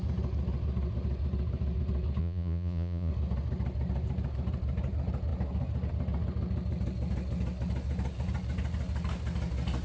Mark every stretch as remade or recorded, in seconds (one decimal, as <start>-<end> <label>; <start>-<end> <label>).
0.0-2.2 recorded; 2.2-3.1 remade; 3.1-9.8 recorded